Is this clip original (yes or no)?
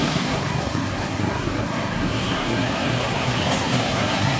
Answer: no